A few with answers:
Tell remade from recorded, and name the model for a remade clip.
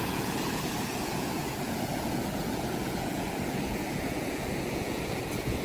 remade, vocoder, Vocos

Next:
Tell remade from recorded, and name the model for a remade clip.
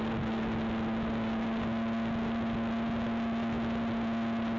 recorded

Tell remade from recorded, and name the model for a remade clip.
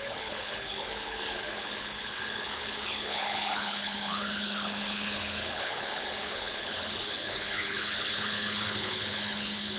remade, codec, HILCodec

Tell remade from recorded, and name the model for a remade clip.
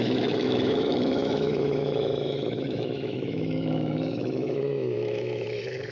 remade, autoencoder, DAC-VAE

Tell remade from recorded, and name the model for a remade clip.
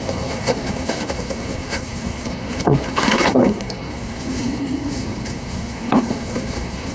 remade, codec, SNAC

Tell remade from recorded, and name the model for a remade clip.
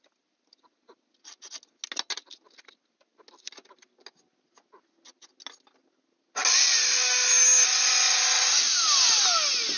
recorded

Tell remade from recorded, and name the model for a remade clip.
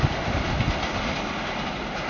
recorded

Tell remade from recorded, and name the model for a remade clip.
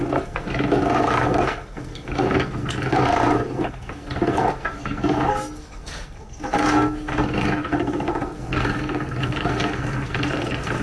remade, codec, SNAC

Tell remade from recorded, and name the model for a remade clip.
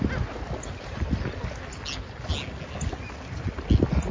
recorded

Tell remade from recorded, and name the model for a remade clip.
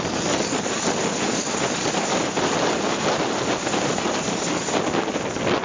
recorded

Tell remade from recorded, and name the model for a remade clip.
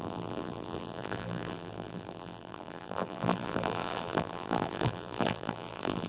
remade, vocoder, BigVGAN v2